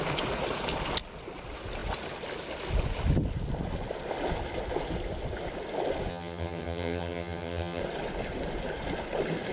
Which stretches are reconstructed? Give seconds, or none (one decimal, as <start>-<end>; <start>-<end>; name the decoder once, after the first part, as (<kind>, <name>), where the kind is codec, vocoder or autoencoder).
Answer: 6.1-7.8 (vocoder, HiFi-GAN)